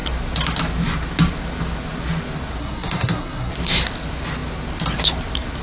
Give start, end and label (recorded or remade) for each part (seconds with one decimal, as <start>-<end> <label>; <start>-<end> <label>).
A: 0.0-2.6 recorded; 2.6-3.5 remade; 3.5-5.6 recorded